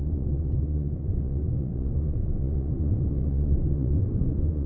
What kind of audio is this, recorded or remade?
remade